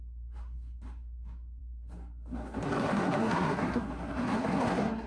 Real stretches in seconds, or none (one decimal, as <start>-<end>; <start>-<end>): none